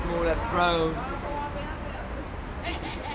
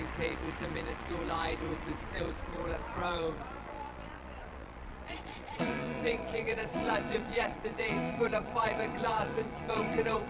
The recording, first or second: first